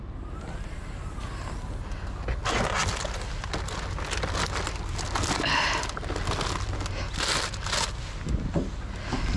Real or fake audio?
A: real